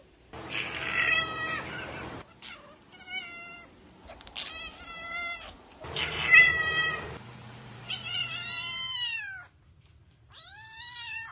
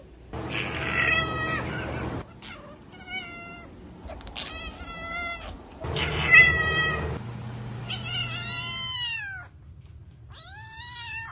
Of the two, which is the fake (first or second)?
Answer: first